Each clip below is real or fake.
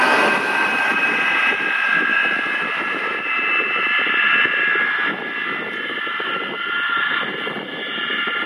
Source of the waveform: real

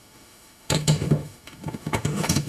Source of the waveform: fake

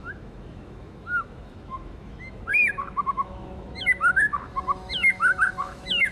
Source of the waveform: fake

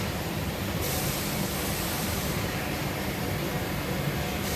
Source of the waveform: fake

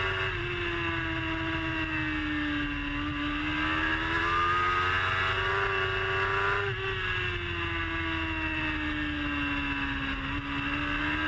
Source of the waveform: real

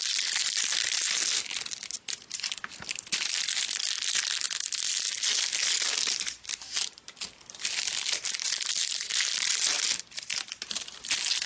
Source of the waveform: real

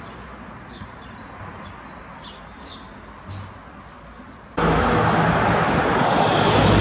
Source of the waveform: real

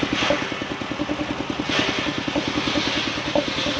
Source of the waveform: real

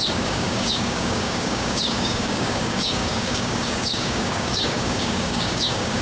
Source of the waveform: fake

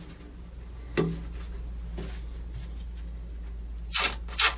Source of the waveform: real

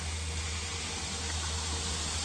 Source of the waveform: real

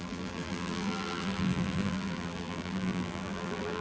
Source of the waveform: fake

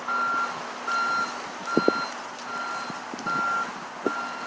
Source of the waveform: real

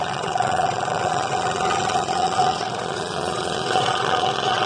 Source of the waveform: fake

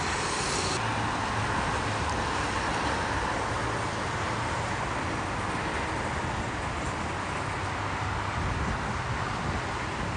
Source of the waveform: real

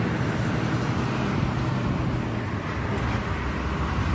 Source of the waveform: fake